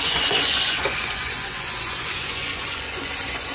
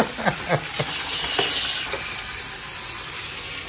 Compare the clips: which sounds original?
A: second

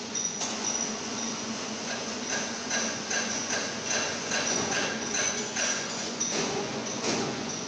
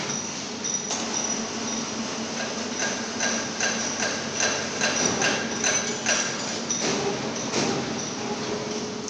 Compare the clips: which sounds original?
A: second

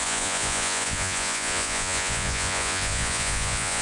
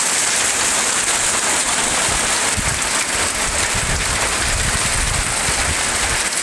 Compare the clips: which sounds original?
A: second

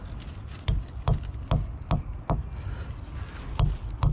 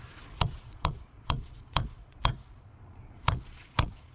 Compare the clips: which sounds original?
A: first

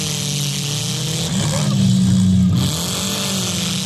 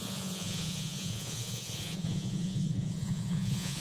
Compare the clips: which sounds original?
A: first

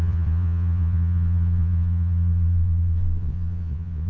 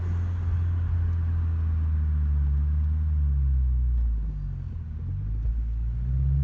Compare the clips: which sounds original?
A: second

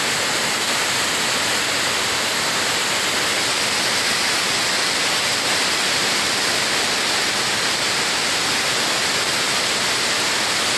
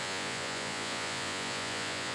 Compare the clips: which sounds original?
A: first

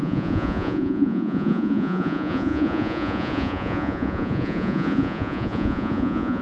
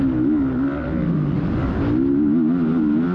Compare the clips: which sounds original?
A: second